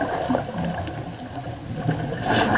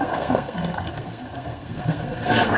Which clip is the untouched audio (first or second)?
first